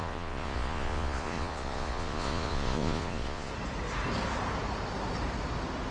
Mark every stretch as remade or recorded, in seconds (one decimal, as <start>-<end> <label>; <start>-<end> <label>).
0.0-3.5 remade; 3.5-5.9 recorded